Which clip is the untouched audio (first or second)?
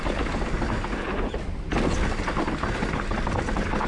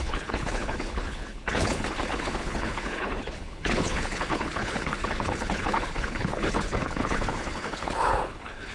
first